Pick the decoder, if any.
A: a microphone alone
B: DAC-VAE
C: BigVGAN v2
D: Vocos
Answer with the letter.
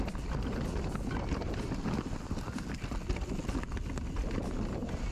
A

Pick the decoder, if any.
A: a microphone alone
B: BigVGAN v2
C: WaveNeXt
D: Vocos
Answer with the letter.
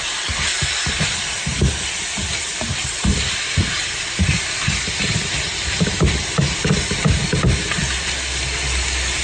A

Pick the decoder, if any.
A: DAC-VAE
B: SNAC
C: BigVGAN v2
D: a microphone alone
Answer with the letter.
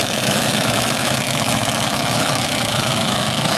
A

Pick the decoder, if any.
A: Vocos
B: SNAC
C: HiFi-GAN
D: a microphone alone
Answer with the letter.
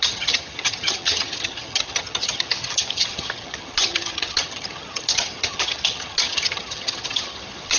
C